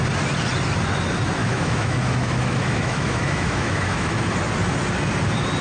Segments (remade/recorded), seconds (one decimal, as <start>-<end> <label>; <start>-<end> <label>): 0.0-1.4 recorded; 1.4-4.3 remade; 4.3-5.6 recorded